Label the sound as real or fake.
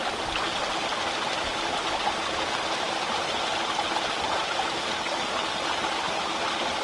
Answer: real